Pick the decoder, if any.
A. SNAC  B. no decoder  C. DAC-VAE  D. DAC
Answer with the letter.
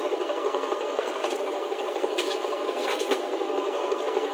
A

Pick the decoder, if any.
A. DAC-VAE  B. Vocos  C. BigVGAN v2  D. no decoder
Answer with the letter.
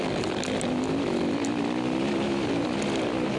D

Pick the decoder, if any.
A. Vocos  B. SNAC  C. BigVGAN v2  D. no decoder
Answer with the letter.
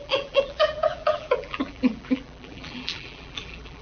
C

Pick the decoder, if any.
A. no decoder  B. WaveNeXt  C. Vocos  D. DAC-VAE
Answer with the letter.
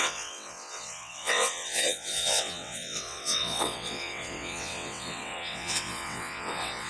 B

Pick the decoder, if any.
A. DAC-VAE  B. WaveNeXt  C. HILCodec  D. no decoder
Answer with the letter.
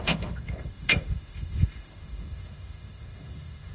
A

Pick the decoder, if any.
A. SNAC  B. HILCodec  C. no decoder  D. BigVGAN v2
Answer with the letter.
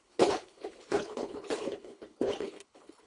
B